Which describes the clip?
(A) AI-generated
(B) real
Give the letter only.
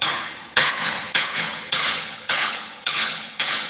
A